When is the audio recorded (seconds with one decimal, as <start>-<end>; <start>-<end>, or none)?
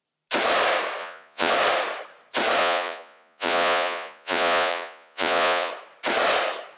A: 0.0-1.0; 1.5-2.6; 5.7-6.8